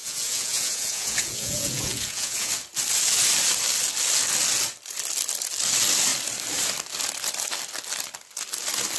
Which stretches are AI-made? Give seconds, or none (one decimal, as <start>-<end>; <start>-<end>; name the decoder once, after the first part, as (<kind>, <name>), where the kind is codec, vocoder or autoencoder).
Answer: 0.0-2.5 (vocoder, Vocos)